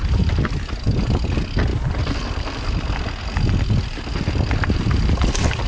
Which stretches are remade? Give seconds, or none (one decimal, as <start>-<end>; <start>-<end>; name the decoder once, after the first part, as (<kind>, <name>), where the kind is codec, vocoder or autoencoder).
none